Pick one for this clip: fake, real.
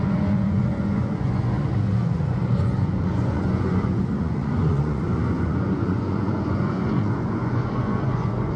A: fake